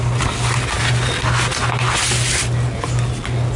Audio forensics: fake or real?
real